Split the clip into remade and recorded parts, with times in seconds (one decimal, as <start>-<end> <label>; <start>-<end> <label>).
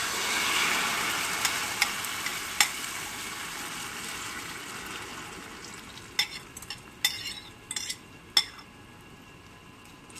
0.0-10.2 recorded